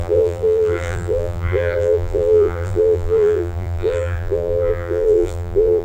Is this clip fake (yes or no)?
yes